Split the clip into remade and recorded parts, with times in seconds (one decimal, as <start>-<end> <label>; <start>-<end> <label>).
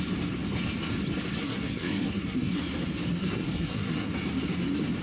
0.0-1.4 recorded; 1.4-2.5 remade; 2.5-3.2 recorded; 3.2-4.1 remade; 4.1-5.0 recorded